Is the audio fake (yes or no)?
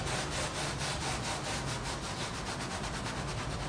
yes